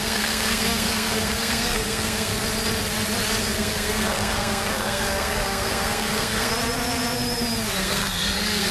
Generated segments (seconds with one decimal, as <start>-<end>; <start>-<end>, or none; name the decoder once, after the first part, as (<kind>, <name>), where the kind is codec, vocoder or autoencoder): 0.0-2.3 (codec, SNAC); 3.4-6.5; 7.8-8.7